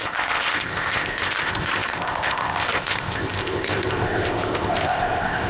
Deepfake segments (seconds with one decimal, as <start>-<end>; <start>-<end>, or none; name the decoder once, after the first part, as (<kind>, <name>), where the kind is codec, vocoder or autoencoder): 0.0-5.5 (codec, ZipCodec)